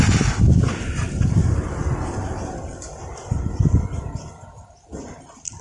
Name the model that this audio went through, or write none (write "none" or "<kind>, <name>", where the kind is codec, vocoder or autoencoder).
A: none